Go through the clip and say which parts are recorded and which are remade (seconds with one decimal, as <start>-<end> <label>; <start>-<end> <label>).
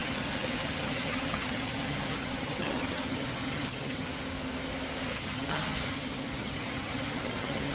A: 0.0-4.0 remade; 4.0-5.1 recorded; 5.1-7.7 remade